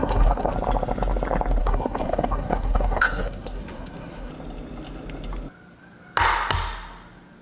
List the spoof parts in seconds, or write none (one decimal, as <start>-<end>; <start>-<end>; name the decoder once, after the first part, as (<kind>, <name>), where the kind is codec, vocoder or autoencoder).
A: 0.0-0.5 (codec, SNAC); 1.6-4.3